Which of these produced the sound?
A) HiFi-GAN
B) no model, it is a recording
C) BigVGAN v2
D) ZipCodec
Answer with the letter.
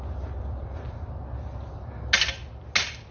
B